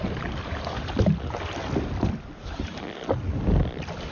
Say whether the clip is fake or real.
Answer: real